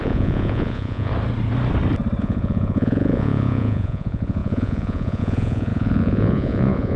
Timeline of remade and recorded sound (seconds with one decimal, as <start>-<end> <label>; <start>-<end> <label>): 0.0-1.1 remade; 1.1-2.2 recorded; 2.2-7.0 remade